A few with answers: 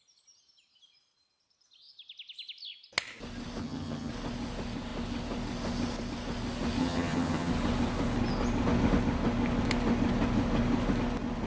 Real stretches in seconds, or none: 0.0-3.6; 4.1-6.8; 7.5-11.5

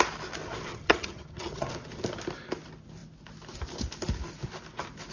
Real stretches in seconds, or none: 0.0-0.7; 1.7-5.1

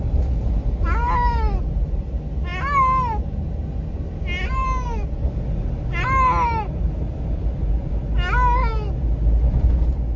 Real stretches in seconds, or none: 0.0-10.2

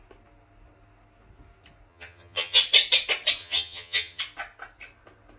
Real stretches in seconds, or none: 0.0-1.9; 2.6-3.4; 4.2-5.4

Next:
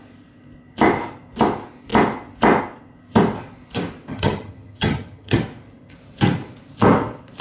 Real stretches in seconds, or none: 0.0-4.1; 5.4-7.4

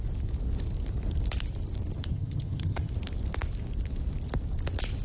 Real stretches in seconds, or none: 0.0-2.1; 2.9-5.0

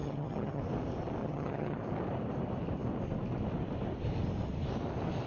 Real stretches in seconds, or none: 0.6-1.2; 1.8-5.3